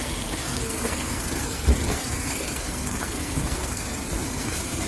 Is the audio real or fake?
fake